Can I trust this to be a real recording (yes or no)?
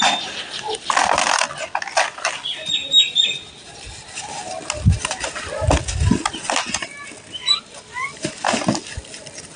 yes